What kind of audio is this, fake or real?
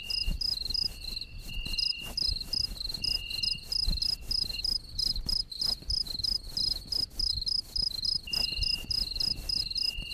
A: real